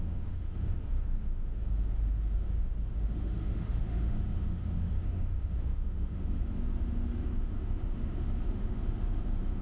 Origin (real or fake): fake